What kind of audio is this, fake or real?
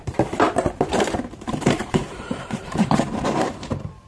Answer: fake